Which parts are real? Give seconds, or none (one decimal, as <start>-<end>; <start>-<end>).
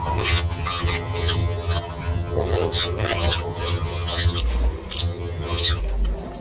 4.4-5.0; 5.8-6.4